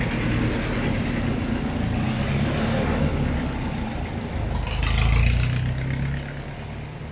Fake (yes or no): no